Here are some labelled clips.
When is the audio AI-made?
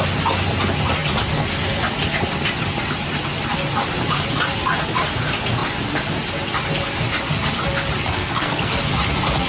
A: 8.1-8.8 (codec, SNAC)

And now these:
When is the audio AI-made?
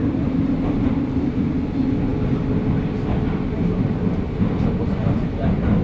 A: none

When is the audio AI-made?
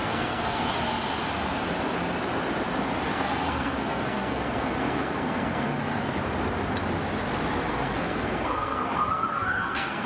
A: 0.0-0.8 (codec, SNAC); 3.1-6.2; 7.7-10.1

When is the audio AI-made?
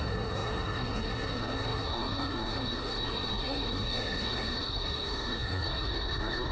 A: 0.0-6.5 (codec, SNAC)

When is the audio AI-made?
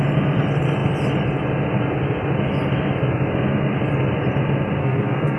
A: 4.8-5.4 (codec, SNAC)